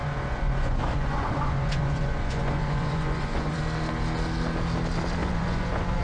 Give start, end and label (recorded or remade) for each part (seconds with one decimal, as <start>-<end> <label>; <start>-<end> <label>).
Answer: 0.0-3.6 remade; 3.6-5.2 recorded; 5.2-6.0 remade